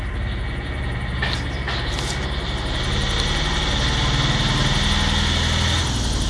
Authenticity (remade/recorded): recorded